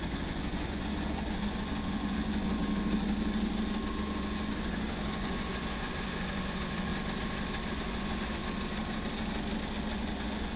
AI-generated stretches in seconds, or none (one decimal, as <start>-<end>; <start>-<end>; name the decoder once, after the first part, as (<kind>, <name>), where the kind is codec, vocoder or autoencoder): 0.0-2.6 (vocoder, Vocos); 3.9-6.9; 7.7-8.4; 9.8-10.6

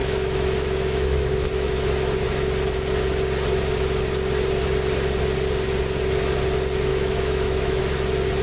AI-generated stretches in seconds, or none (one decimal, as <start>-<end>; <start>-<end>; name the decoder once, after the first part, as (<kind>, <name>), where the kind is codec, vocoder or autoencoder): 0.0-1.9 (autoencoder, DAC-VAE); 6.9-7.8

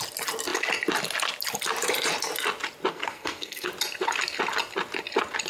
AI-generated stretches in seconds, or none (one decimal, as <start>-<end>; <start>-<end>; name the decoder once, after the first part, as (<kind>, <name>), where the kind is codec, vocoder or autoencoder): 2.9-3.7 (codec, SNAC)

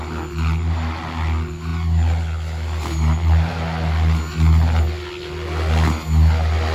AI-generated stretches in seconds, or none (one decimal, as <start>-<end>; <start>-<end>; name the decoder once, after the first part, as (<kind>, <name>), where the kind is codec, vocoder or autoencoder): none

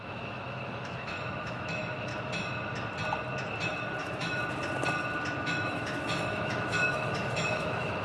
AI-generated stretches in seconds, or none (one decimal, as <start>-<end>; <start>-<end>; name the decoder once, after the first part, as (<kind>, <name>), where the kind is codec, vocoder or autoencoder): 0.0-2.1 (autoencoder, DAC-VAE); 4.0-4.4; 5.4-8.0

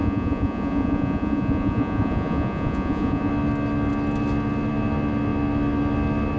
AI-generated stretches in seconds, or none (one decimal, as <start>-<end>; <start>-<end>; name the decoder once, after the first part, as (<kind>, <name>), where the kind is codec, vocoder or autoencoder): 0.0-3.3 (vocoder, Vocos)